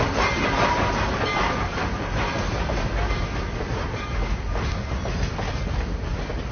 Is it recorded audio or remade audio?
recorded